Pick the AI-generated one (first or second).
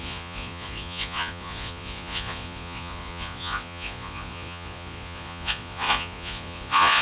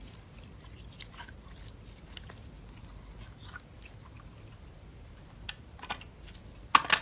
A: first